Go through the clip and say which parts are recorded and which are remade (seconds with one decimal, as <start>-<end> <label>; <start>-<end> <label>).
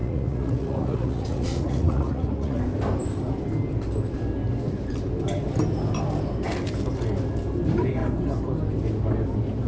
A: 0.0-2.6 remade; 2.6-9.7 recorded